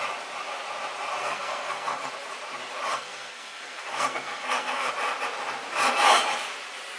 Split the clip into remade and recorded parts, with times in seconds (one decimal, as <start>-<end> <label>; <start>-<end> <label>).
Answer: 0.0-1.2 recorded; 1.2-2.1 remade; 2.1-2.9 recorded; 2.9-4.9 remade; 4.9-7.0 recorded